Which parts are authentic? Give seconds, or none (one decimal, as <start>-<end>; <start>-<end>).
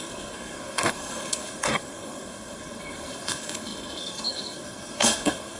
none